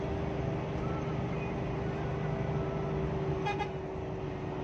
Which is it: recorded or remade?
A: recorded